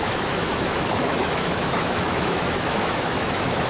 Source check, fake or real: fake